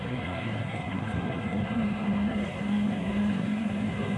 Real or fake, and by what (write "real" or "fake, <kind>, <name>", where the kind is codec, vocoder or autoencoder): fake, codec, SNAC